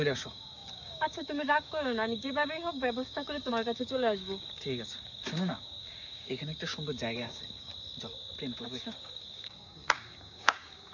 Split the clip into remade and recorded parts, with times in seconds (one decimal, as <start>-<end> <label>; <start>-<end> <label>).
0.0-7.7 remade; 7.7-8.6 recorded; 8.6-10.9 remade